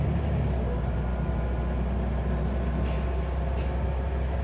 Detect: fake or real real